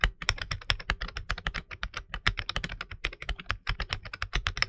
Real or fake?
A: fake